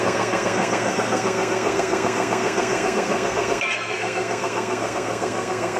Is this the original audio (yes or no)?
no